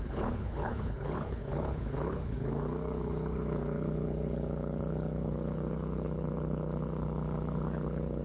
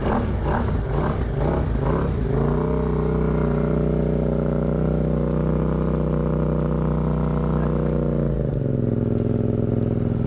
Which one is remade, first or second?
first